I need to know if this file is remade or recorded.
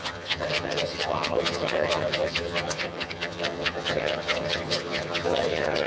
remade